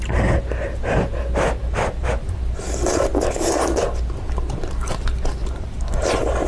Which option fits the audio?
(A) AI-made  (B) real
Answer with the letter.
B